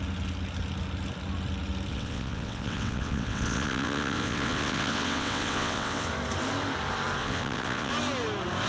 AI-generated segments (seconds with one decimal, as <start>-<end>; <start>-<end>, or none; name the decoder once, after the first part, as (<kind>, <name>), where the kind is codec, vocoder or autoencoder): 1.9-6.1 (vocoder, WaveNeXt); 7.2-7.9